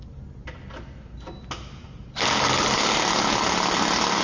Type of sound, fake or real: real